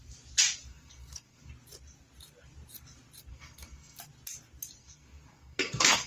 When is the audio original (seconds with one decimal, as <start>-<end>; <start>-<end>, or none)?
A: 0.0-0.7; 1.5-3.3; 4.0-4.8